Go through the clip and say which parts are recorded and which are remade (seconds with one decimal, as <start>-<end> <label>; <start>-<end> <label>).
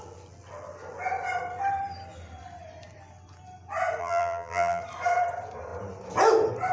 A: 0.0-4.0 recorded; 4.0-4.8 remade; 4.8-6.7 recorded